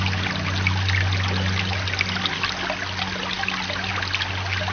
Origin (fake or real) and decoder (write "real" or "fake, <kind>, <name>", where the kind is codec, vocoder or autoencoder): real